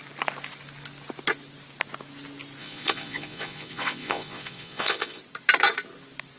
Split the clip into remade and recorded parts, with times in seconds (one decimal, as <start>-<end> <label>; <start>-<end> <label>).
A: 0.0-2.6 recorded; 2.6-5.2 remade; 5.2-6.4 recorded

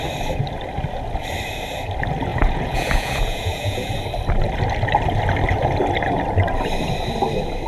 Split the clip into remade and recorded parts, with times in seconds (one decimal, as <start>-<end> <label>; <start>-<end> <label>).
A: 0.0-2.3 recorded; 2.3-3.9 remade; 3.9-7.7 recorded

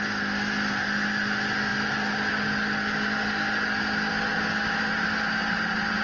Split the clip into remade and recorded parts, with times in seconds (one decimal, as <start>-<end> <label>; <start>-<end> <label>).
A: 0.0-6.0 recorded

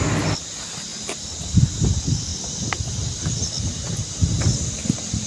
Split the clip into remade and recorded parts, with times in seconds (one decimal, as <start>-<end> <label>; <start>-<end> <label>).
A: 0.0-5.3 recorded

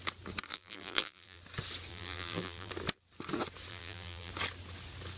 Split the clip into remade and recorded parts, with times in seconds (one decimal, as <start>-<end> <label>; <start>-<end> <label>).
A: 0.0-0.5 recorded; 0.5-1.4 remade; 1.4-1.9 recorded; 1.9-2.7 remade; 2.7-3.7 recorded; 3.7-4.3 remade; 4.3-5.2 recorded

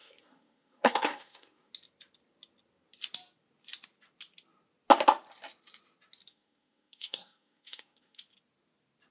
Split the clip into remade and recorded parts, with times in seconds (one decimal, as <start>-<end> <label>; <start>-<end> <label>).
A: 0.0-1.7 remade; 1.7-6.3 recorded; 6.3-8.2 remade; 8.2-9.1 recorded

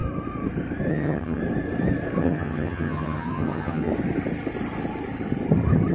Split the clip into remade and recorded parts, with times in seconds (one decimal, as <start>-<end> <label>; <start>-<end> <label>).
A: 0.0-0.9 recorded; 0.9-1.4 remade; 1.4-2.2 recorded; 2.2-3.9 remade; 3.9-5.9 recorded

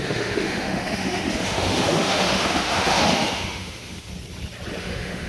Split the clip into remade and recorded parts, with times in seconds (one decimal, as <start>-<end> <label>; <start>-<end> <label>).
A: 0.0-4.1 remade; 4.1-4.8 recorded; 4.8-5.3 remade